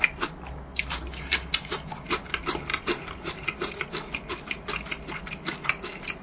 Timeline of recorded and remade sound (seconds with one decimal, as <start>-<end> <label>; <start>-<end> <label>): 0.0-0.7 recorded; 0.7-2.3 remade; 2.3-2.7 recorded; 2.7-3.7 remade; 3.7-6.2 recorded